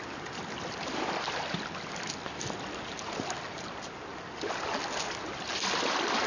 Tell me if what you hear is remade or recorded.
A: recorded